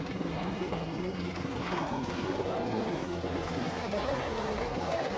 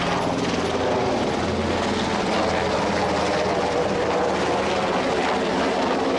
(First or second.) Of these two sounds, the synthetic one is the first